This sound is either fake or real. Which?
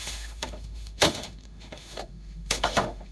fake